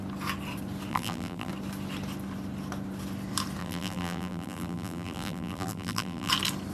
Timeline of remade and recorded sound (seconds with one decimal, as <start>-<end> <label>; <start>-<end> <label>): 0.0-0.9 recorded; 0.9-1.5 remade; 1.5-3.6 recorded; 3.6-6.3 remade; 6.3-6.7 recorded